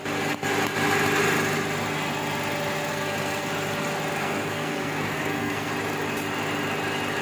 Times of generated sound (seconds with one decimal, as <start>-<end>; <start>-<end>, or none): 2.9-3.5; 4.2-5.7

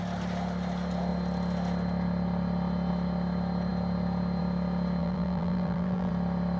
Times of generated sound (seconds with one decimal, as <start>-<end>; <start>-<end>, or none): 5.0-6.1

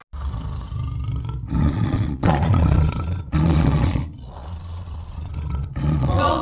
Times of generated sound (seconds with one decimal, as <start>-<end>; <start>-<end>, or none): 1.6-6.4

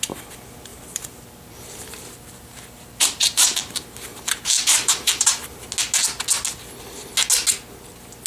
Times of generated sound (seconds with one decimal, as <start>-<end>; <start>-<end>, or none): 0.7-3.6; 4.1-5.7